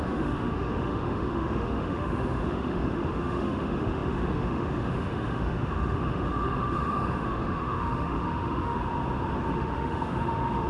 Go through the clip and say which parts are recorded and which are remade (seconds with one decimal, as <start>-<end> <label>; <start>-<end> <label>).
0.0-8.8 remade; 8.8-9.5 recorded; 9.5-10.7 remade